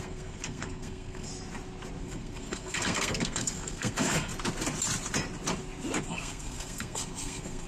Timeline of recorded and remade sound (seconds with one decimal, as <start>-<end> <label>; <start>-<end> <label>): 0.0-1.3 remade; 1.3-2.0 recorded; 2.0-4.3 remade; 4.3-6.1 recorded; 6.1-7.7 remade